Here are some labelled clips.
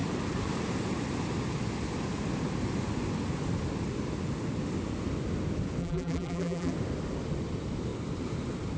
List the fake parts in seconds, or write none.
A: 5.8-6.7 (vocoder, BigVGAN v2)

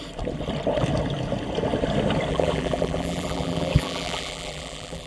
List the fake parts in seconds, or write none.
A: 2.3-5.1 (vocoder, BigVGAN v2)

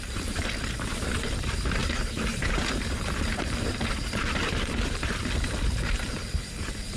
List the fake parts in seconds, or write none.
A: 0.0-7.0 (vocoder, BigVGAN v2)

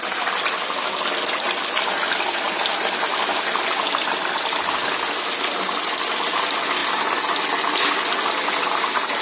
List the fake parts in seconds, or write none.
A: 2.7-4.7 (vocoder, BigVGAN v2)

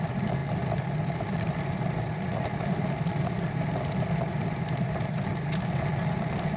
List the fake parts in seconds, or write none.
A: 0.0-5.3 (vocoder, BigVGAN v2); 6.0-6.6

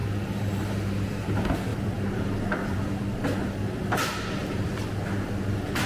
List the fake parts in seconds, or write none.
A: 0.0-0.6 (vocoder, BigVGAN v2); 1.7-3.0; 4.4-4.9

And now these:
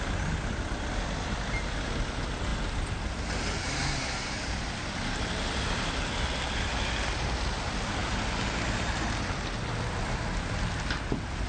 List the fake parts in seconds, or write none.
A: none